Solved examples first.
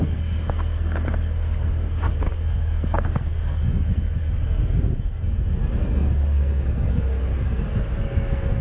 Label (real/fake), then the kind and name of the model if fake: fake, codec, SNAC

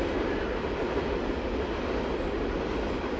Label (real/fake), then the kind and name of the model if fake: real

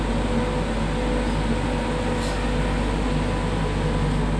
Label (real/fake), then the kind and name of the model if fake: real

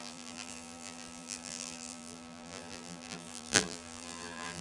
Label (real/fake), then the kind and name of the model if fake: fake, vocoder, BigVGAN v2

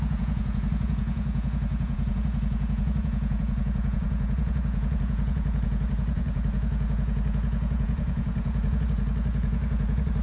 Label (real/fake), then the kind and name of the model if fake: fake, vocoder, Vocos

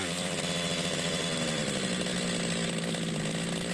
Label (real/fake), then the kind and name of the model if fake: real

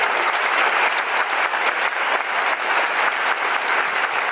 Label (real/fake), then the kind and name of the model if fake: real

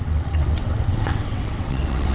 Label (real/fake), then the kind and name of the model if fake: fake, vocoder, WaveNeXt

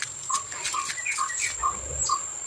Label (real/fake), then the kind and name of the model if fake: real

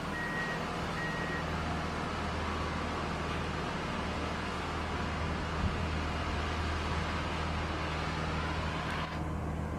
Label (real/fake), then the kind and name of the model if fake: real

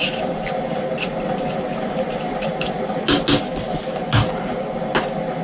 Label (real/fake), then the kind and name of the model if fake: real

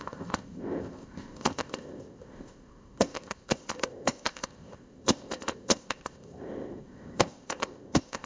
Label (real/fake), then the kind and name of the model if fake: fake, codec, ZipCodec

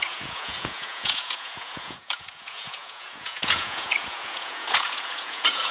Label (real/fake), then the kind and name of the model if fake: fake, vocoder, Vocos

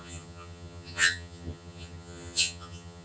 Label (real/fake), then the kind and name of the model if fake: fake, vocoder, HiFi-GAN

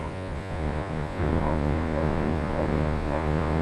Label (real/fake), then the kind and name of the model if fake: fake, vocoder, Vocos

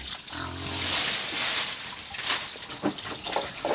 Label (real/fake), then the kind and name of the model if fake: real